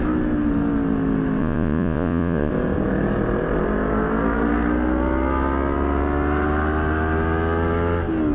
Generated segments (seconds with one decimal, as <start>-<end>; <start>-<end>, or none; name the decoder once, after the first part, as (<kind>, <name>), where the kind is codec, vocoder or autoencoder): 1.4-2.5 (vocoder, Vocos)